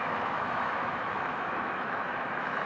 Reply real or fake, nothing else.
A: fake